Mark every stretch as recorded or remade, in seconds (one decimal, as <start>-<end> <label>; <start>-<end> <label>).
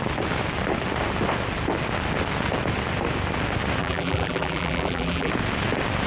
0.0-3.8 recorded; 3.8-5.3 remade; 5.3-6.1 recorded